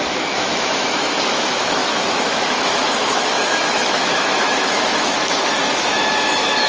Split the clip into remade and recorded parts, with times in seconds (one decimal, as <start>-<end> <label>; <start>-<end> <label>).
0.0-6.7 remade